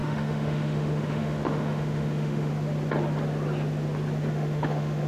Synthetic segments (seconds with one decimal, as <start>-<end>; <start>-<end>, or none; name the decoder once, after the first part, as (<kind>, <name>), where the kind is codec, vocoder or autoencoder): 0.0-2.5 (autoencoder, DAC-VAE); 4.3-5.1